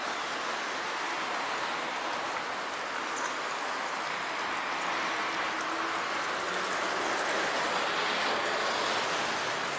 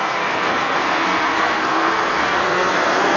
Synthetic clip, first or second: second